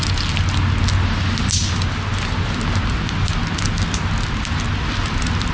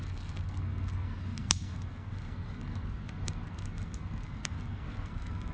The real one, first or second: first